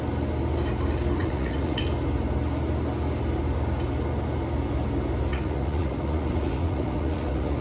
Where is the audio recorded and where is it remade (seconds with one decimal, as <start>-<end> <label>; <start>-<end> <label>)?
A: 0.0-1.2 recorded; 1.2-1.8 remade; 1.8-5.3 recorded; 5.3-7.6 remade

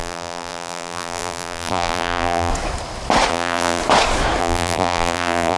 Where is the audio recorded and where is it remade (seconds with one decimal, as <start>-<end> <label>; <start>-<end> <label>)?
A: 0.0-2.5 remade; 2.5-3.3 recorded; 3.3-3.8 remade; 3.8-4.4 recorded; 4.4-5.6 remade

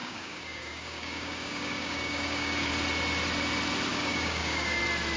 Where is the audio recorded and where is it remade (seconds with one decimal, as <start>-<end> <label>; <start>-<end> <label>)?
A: 0.0-2.7 remade; 2.7-3.9 recorded; 3.9-4.8 remade; 4.8-5.2 recorded

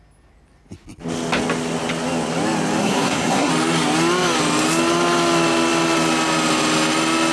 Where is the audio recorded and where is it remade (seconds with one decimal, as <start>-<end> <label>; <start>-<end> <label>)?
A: 0.0-2.8 recorded; 2.8-3.5 remade; 3.5-7.3 recorded